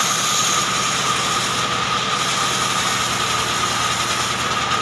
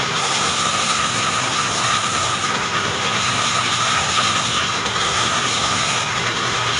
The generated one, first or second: second